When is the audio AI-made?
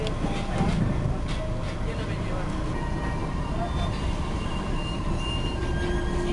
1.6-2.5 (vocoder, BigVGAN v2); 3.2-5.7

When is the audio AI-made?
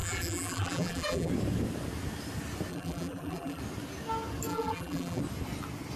0.0-1.3 (vocoder, BigVGAN v2); 2.7-3.6; 4.5-5.2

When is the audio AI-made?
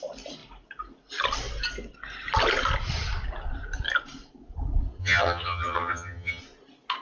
5.0-6.4 (vocoder, HiFi-GAN)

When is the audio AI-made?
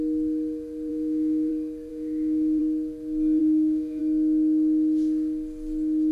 0.9-1.5 (autoencoder, DAC-VAE); 1.9-2.6; 3.4-4.0